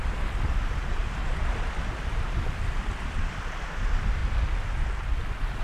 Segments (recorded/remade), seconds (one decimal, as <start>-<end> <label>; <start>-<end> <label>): 0.0-4.2 remade; 4.2-5.6 recorded